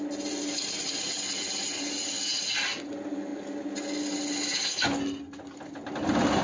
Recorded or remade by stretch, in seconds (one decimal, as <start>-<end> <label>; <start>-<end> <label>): 0.0-6.4 recorded